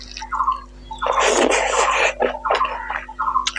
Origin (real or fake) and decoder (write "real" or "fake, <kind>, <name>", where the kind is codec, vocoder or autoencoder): real